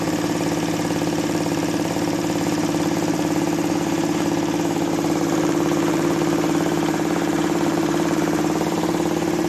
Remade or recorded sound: remade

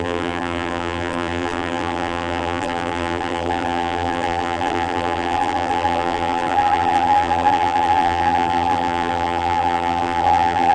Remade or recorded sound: remade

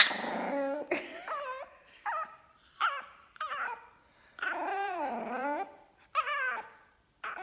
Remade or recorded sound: remade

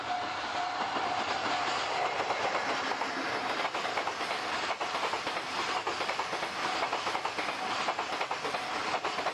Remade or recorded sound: remade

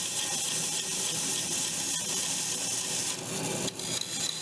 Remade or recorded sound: recorded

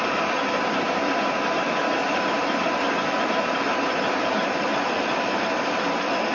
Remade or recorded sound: remade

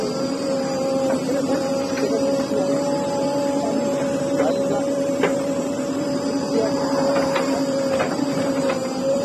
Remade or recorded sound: remade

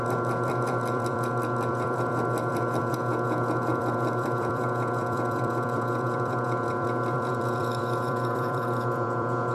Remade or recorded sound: remade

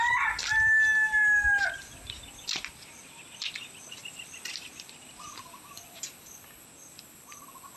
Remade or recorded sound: recorded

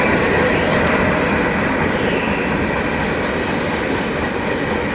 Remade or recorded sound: remade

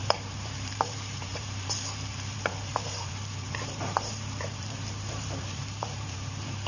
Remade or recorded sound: remade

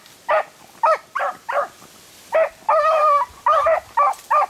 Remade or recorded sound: remade